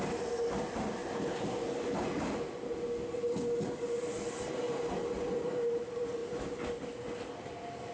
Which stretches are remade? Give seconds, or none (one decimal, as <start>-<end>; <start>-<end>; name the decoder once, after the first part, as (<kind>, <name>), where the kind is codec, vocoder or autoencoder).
none